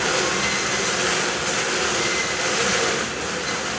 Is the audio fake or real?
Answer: real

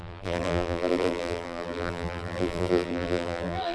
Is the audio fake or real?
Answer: fake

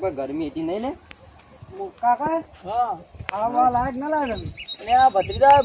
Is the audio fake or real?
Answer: real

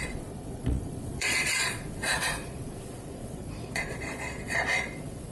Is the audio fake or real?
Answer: fake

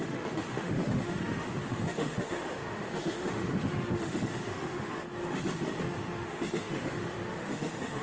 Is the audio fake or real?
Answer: fake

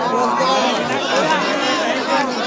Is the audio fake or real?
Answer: real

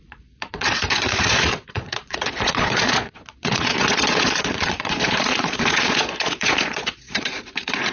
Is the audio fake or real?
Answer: fake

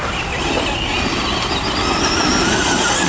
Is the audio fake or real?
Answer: real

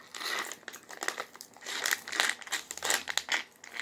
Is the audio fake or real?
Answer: real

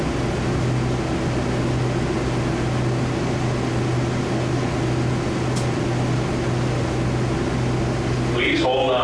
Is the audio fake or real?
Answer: real